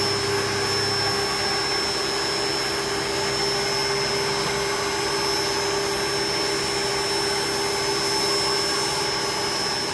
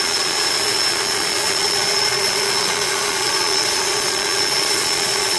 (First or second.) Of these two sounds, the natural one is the first